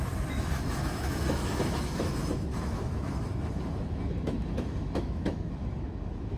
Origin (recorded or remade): remade